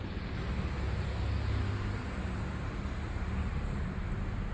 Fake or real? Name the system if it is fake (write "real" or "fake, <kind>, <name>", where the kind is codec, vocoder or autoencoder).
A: real